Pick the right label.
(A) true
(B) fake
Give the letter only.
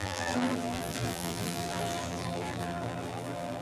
B